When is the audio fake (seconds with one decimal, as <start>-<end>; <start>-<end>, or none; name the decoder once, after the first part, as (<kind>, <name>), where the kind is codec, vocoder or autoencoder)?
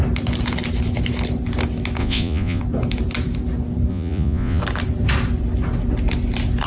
2.0-2.6 (vocoder, Vocos); 3.9-4.6